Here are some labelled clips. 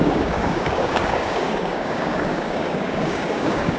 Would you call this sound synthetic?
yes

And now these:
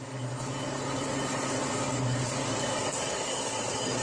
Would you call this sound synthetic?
no